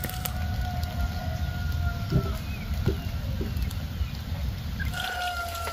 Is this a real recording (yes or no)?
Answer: yes